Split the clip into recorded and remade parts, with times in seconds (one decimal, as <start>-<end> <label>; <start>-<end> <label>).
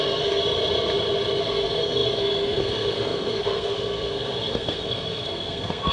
0.0-0.4 remade; 0.4-1.4 recorded; 1.4-5.9 remade